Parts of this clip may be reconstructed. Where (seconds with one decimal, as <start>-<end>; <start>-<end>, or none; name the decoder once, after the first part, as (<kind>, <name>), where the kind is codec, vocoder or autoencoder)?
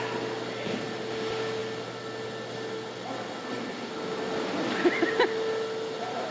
none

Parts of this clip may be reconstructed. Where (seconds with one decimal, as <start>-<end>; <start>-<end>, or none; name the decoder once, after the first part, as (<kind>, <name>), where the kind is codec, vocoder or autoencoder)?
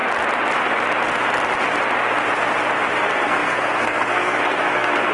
3.0-5.1 (codec, SNAC)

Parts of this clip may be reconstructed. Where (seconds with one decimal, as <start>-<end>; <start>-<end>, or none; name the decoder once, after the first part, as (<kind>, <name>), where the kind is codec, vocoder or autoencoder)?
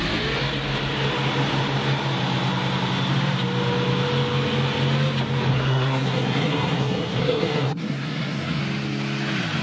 5.5-8.6 (codec, SNAC)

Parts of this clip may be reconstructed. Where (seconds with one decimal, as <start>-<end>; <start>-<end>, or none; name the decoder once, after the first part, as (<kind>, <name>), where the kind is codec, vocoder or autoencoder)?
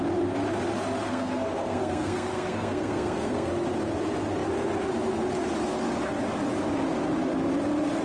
1.1-3.5 (codec, SNAC)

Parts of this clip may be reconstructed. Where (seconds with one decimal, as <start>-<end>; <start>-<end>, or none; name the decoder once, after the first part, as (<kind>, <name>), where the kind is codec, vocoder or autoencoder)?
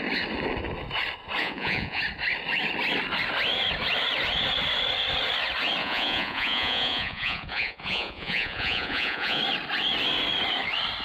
1.4-2.0 (vocoder, Vocos); 5.8-9.4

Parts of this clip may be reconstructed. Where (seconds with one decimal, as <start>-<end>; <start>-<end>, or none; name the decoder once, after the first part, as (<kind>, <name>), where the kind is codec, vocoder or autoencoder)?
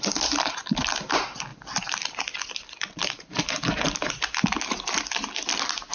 none